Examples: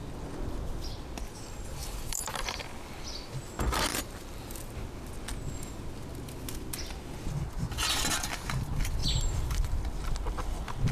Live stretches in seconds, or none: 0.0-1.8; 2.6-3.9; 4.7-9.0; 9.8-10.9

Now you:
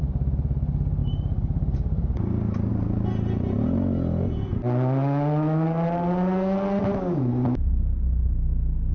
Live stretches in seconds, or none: 0.0-1.0; 2.7-8.9

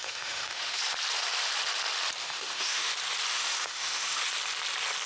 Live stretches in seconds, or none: 0.8-2.2; 2.9-3.3; 4.2-5.1

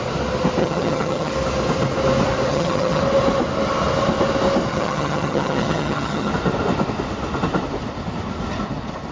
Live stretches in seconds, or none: 0.0-0.6; 1.3-2.5; 3.0-4.7; 6.3-9.1

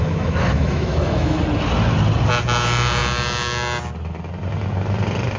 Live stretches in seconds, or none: 1.4-5.4